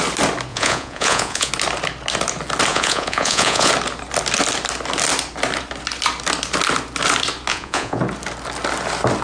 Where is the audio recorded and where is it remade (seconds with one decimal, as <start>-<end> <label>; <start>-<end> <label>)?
0.0-0.5 recorded; 0.5-1.5 remade; 1.5-2.7 recorded; 2.7-3.7 remade; 3.7-7.5 recorded; 7.5-8.0 remade; 8.0-9.2 recorded